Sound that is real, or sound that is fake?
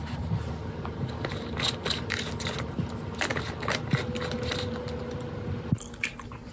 real